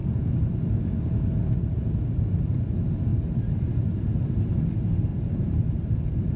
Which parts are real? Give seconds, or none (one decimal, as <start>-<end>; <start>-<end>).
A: 0.6-5.1